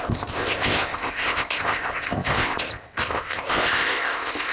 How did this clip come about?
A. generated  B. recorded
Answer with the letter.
A